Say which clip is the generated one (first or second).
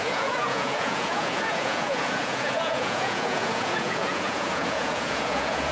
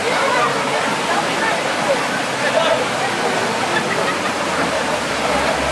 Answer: first